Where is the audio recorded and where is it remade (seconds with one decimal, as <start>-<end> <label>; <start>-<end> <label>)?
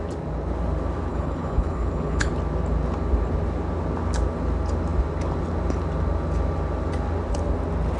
0.0-1.1 recorded; 1.1-2.3 remade; 2.3-8.0 recorded